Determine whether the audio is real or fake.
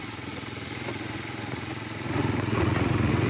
fake